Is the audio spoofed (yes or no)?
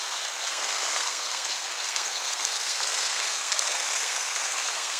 yes